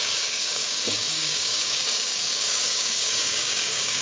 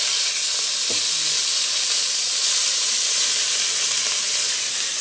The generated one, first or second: first